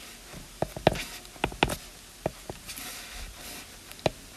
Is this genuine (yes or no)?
yes